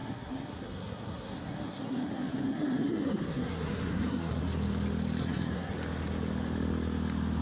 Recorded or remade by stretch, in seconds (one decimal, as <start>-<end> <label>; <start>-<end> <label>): 0.0-4.4 remade; 4.4-5.2 recorded; 5.2-5.7 remade; 5.7-7.4 recorded